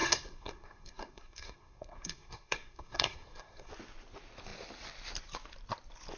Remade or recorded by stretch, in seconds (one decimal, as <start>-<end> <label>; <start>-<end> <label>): 0.0-3.7 remade; 3.7-6.2 recorded